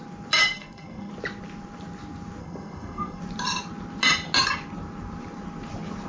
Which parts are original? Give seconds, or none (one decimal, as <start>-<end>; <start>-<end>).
0.0-0.4; 1.1-2.4; 3.2-6.1